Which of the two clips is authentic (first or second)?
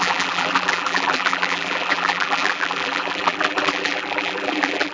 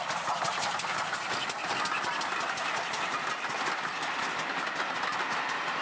second